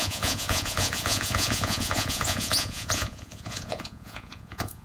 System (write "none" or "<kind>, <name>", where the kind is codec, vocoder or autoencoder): vocoder, Vocos